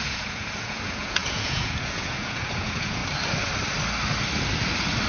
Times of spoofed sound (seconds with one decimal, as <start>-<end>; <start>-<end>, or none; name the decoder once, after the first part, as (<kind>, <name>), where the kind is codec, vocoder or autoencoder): 0.0-3.0 (vocoder, Vocos)